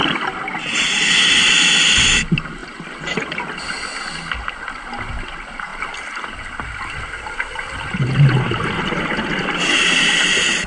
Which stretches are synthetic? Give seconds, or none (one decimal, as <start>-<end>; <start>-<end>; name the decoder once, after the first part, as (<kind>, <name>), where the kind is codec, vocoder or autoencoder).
none

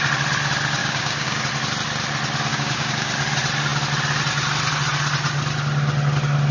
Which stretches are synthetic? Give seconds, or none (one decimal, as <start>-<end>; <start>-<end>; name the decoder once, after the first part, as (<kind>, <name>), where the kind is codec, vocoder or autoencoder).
0.8-1.4 (codec, DAC); 2.5-3.1

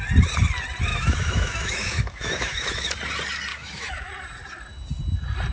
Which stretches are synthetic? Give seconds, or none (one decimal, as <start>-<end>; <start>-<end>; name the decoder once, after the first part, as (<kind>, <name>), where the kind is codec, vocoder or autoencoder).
0.9-2.9 (autoencoder, DAC-VAE); 3.5-4.1

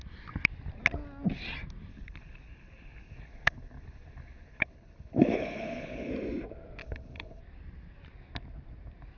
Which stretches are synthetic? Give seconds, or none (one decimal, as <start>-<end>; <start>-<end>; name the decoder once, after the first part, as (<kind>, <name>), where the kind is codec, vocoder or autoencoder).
1.9-6.1 (codec, HILCodec); 6.8-7.4

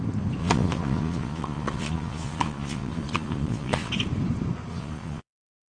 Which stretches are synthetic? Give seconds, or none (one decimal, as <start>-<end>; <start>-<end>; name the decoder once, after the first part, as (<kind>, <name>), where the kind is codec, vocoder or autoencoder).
0.4-3.9 (vocoder, Vocos); 4.7-5.8

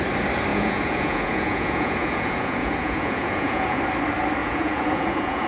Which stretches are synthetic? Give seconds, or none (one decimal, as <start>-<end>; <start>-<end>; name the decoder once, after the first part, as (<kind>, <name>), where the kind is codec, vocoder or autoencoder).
0.5-3.8 (vocoder, Vocos); 4.4-5.5

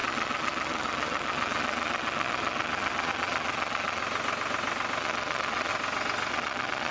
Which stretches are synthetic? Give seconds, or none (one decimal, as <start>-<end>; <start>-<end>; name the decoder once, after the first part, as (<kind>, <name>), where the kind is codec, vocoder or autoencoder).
0.0-4.0 (vocoder, Vocos); 5.0-5.7; 6.3-6.9

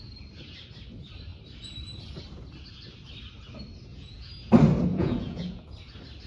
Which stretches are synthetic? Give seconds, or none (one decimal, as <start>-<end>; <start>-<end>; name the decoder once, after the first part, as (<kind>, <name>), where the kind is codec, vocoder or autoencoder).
3.9-4.5 (vocoder, Vocos); 4.9-5.8